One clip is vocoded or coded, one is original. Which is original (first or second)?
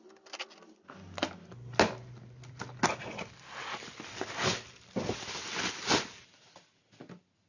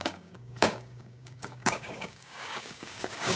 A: first